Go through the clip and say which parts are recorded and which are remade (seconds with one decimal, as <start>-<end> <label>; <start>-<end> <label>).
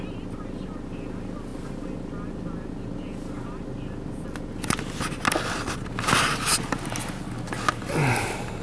0.0-8.6 recorded